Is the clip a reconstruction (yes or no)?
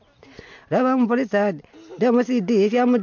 no